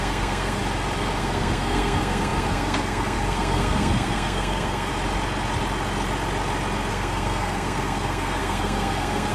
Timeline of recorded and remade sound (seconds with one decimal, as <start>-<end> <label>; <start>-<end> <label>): 0.0-0.6 remade; 0.6-1.2 recorded; 1.2-4.9 remade; 4.9-6.9 recorded; 6.9-9.3 remade